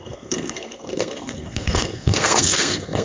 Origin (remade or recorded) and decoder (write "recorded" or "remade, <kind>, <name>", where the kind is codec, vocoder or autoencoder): remade, codec, SNAC